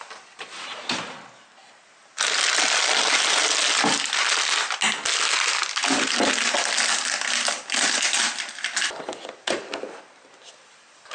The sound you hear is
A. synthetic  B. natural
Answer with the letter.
B